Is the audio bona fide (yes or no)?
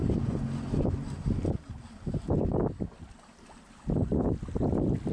yes